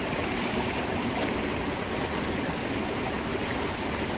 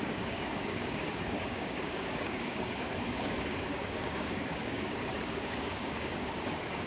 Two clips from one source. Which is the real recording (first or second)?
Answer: first